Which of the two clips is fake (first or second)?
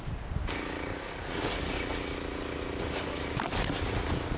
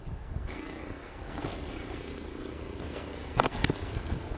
second